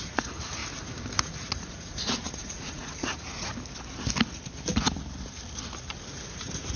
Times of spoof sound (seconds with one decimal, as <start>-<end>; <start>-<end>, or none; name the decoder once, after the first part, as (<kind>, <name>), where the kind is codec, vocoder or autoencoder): 0.0-0.6 (vocoder, Vocos); 1.2-3.5; 5.9-6.8